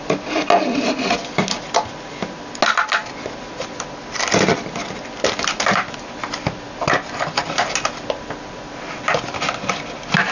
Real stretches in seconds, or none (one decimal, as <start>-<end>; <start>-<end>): 0.0-10.3